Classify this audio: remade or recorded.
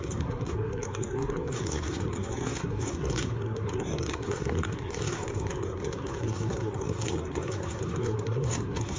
remade